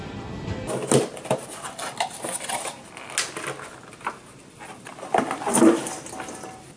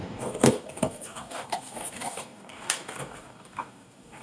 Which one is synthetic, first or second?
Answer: second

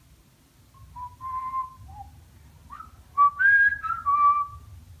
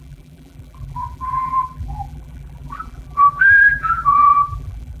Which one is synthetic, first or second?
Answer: second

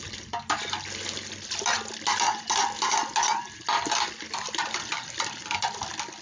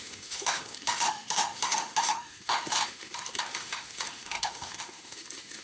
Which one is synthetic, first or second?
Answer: second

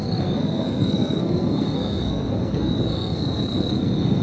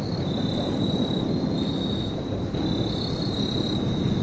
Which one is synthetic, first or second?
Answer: first